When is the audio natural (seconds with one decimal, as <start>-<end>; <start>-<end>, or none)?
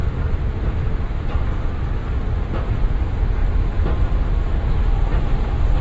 0.0-5.8